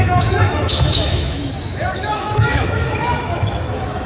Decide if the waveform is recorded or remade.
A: remade